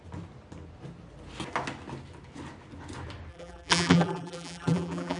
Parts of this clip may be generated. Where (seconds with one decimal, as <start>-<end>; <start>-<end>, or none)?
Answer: 3.3-5.2